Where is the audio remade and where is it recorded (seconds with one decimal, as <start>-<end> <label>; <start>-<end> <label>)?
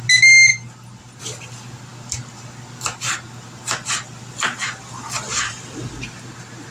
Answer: 0.0-6.7 recorded